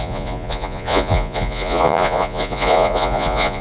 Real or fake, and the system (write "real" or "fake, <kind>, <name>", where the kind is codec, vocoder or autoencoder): fake, vocoder, Vocos